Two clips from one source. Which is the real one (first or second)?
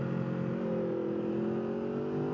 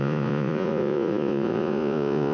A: first